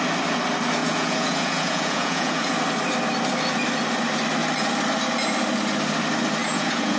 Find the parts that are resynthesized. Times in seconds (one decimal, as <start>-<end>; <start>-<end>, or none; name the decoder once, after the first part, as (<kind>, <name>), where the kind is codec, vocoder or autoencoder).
0.8-2.5 (vocoder, Vocos); 6.4-7.0